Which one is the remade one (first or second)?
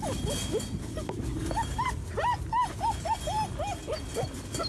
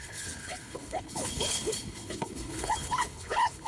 second